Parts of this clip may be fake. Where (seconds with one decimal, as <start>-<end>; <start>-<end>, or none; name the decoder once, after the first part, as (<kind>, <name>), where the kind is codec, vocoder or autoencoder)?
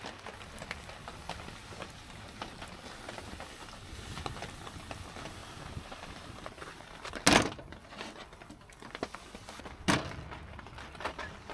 1.6-2.6 (vocoder, BigVGAN v2); 5.4-7.1